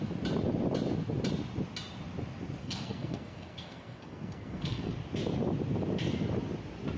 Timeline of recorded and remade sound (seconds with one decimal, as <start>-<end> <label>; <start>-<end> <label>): 0.0-2.6 recorded; 2.6-4.9 remade; 4.9-7.0 recorded